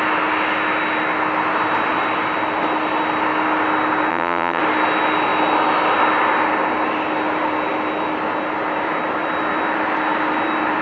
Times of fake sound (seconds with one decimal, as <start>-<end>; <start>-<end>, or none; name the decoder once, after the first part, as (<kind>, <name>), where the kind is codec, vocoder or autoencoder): 4.1-4.6 (vocoder, HiFi-GAN)

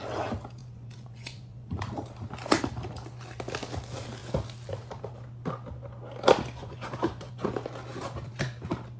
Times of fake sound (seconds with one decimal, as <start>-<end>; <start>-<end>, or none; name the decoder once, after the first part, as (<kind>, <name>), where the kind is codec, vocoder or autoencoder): 0.6-1.8 (vocoder, Vocos); 6.6-7.5

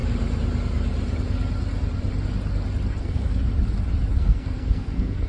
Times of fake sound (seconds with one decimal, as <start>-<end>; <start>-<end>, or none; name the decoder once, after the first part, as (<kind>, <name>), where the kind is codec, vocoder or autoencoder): 3.0-3.4 (codec, SNAC); 4.2-5.3

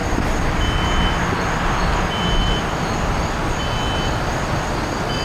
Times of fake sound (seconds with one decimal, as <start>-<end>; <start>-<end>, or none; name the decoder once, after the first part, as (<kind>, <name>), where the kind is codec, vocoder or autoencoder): none

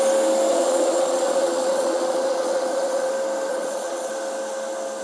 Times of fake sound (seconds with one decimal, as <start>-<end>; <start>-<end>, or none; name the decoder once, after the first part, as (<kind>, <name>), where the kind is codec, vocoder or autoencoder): 0.5-3.1 (vocoder, Vocos); 3.5-4.1

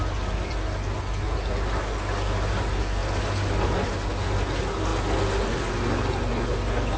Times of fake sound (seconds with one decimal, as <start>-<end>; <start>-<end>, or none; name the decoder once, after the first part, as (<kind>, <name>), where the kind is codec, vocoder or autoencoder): none

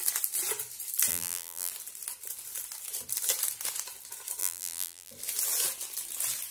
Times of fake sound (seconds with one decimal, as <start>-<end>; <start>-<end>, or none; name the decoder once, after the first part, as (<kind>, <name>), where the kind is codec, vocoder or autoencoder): 1.1-1.7 (vocoder, BigVGAN v2); 4.4-5.1